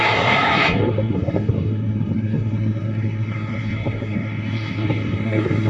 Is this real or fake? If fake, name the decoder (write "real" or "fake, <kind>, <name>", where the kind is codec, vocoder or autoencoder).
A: fake, codec, SNAC